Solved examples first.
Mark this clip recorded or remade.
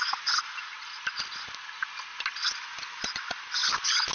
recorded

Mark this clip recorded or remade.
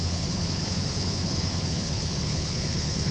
remade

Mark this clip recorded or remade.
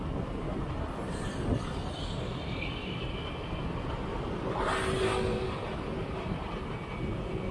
recorded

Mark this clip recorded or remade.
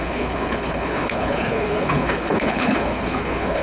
remade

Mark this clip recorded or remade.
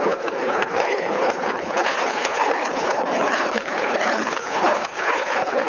remade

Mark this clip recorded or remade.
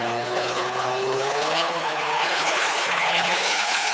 remade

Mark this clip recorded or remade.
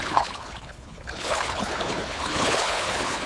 remade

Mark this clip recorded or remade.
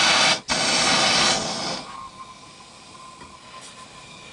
recorded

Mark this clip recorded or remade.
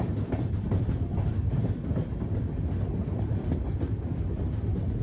recorded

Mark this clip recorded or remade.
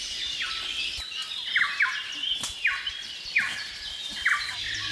recorded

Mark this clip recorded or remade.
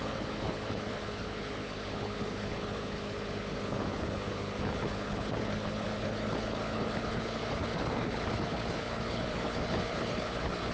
remade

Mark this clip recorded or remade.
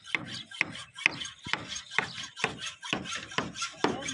recorded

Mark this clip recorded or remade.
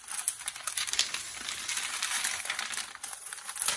recorded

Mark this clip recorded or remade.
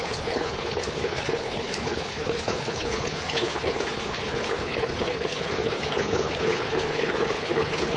remade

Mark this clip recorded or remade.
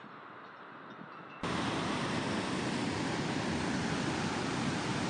recorded